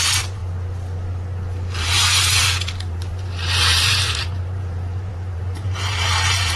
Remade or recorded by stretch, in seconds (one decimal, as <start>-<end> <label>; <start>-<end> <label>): 0.0-0.4 remade; 0.4-1.8 recorded; 1.8-6.6 remade